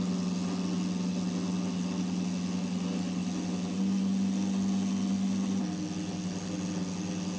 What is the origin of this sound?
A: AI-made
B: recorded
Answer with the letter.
B